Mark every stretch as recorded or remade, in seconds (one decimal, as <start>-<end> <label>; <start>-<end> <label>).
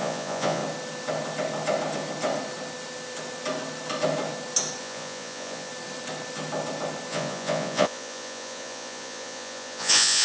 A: 0.0-0.6 remade; 0.6-4.8 recorded; 4.8-5.7 remade; 5.7-7.1 recorded; 7.1-10.2 remade